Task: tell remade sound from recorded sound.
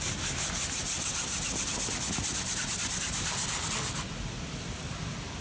recorded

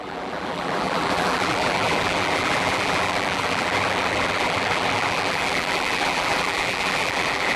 remade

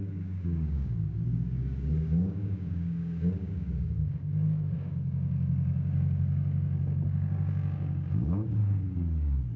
remade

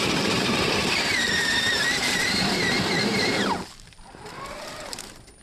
remade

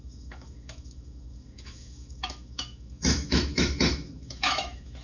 remade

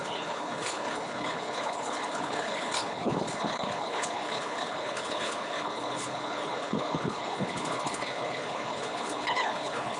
remade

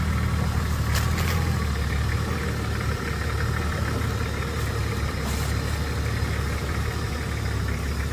recorded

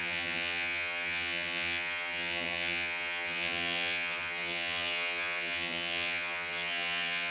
remade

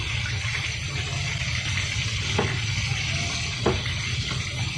recorded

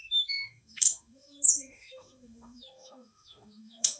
remade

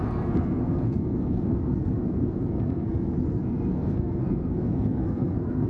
remade